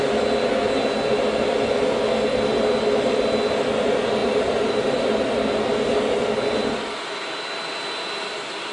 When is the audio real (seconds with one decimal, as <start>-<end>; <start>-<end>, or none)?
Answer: 0.0-4.2; 4.7-8.7